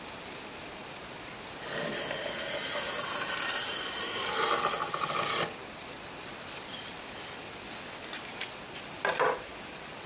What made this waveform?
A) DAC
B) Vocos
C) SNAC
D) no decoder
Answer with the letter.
D